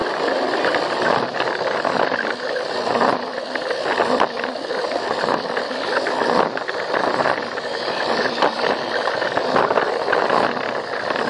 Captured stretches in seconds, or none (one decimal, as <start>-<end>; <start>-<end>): 0.0-11.3